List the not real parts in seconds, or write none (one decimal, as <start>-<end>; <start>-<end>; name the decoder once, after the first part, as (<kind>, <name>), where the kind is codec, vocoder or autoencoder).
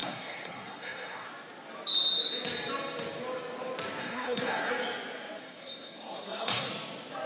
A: 0.0-1.3 (codec, SNAC); 4.0-4.7; 5.4-6.7